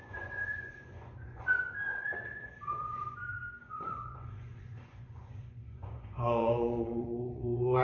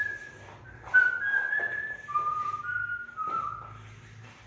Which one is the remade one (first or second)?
first